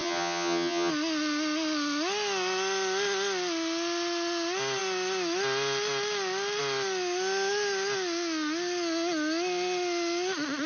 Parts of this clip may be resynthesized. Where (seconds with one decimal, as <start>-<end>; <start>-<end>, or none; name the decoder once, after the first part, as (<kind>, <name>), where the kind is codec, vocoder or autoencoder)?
0.0-0.9 (vocoder, HiFi-GAN)